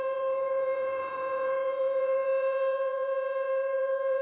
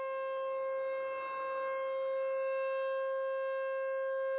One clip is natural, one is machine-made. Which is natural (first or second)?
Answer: second